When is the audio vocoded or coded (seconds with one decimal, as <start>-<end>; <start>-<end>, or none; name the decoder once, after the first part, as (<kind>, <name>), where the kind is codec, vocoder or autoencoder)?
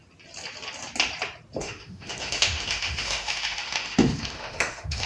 1.6-5.1 (autoencoder, DAC-VAE)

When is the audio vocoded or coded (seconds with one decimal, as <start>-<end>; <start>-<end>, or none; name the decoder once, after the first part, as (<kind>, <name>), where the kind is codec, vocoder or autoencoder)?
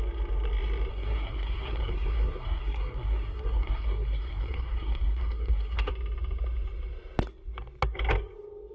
0.9-5.9 (codec, SNAC)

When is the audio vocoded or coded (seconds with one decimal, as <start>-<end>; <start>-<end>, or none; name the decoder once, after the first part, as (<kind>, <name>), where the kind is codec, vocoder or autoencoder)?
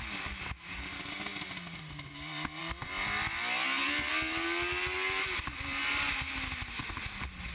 none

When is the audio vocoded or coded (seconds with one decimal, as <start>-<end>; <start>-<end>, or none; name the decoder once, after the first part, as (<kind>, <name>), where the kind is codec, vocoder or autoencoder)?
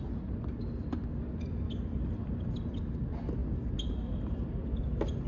none